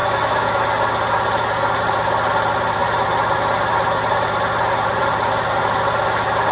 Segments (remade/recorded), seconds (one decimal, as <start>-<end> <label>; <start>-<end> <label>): 0.0-0.6 remade; 0.6-6.5 recorded